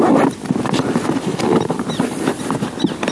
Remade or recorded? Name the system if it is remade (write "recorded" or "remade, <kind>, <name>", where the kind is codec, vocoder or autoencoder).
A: recorded